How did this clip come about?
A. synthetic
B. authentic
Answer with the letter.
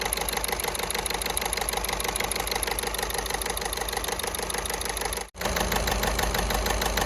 B